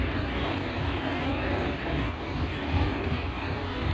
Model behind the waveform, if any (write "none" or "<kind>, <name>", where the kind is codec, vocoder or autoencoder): codec, DAC